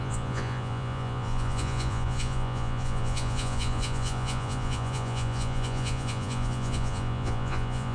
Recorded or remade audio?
remade